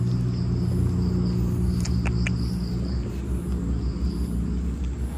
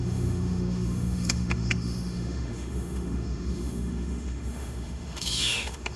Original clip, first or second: first